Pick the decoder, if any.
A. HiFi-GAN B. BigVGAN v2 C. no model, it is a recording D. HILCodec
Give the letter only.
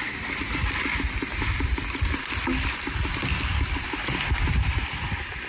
B